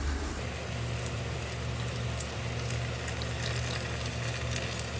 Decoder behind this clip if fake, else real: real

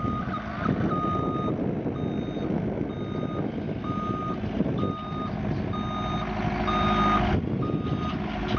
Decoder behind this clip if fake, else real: real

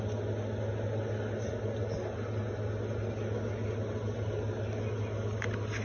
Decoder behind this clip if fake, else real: real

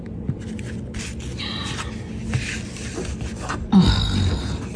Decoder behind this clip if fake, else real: real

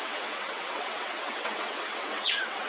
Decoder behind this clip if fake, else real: fake, vocoder, WaveNeXt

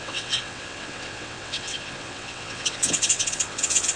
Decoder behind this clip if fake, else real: fake, vocoder, WaveNeXt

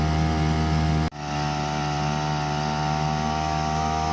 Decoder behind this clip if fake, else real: real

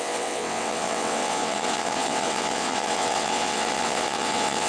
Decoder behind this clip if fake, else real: fake, vocoder, WaveNeXt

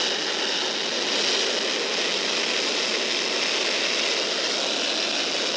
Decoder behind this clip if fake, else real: real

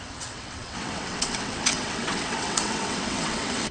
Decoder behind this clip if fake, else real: fake, vocoder, WaveNeXt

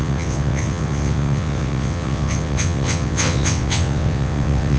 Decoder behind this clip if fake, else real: fake, vocoder, WaveNeXt